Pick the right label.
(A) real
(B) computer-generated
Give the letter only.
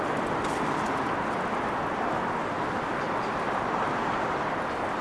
A